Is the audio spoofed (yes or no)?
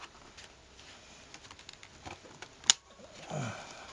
no